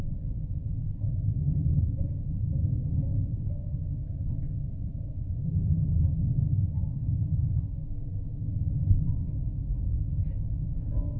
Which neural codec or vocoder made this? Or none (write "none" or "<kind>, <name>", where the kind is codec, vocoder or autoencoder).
autoencoder, DAC-VAE